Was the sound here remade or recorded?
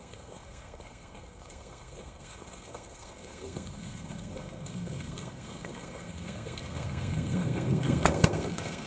remade